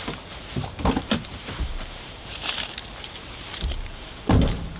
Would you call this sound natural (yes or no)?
no